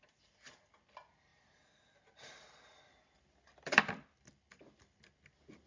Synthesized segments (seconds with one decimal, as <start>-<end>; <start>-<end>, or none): none